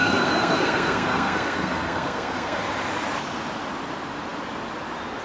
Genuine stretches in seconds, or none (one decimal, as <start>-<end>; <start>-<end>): 2.6-5.2

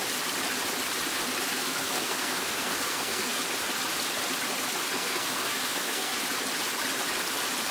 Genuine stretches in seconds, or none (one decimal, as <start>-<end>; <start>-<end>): 0.0-1.5; 3.4-4.9; 6.2-7.7

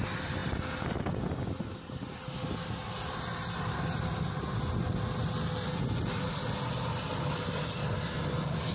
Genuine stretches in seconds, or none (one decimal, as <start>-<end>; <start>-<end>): 0.0-8.7

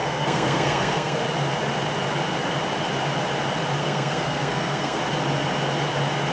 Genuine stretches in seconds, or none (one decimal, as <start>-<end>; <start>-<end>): 1.2-3.8; 5.0-6.3

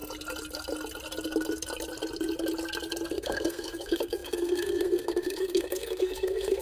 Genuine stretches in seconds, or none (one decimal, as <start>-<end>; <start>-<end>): 0.0-3.1

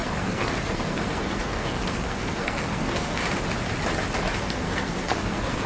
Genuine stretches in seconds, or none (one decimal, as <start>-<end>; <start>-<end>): 3.2-4.4